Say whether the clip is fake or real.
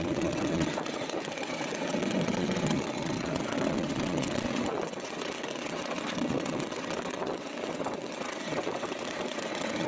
fake